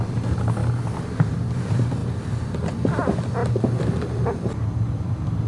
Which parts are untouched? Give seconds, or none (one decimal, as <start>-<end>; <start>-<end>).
3.4-4.7